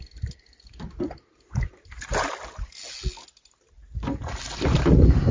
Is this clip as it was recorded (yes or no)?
yes